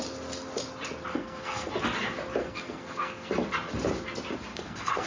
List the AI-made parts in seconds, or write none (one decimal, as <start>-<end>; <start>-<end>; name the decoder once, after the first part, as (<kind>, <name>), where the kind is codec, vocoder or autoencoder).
1.1-1.7 (codec, SNAC); 2.4-3.3; 4.5-5.1